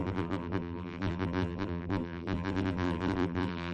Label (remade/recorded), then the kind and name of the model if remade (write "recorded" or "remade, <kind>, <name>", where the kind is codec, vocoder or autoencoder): remade, vocoder, BigVGAN v2